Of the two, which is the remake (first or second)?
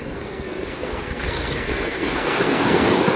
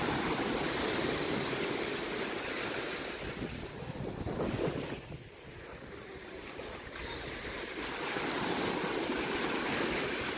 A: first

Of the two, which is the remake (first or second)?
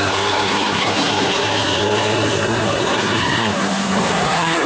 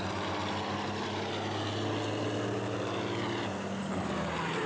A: first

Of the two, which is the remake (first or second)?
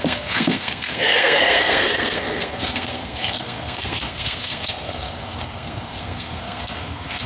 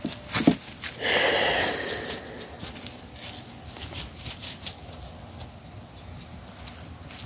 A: first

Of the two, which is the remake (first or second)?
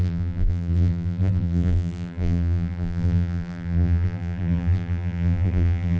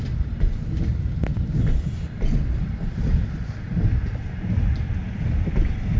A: first